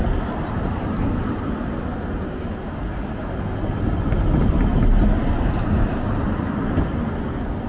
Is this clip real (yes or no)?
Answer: yes